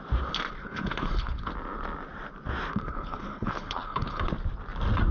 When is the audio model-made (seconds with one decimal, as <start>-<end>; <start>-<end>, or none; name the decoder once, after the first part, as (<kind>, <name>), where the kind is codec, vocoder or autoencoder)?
0.6-1.5 (codec, HILCodec); 2.7-4.3